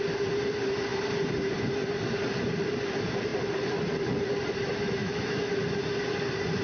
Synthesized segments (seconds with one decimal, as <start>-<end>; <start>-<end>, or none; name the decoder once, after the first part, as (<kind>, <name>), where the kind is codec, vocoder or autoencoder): 5.0-5.5 (autoencoder, DAC-VAE)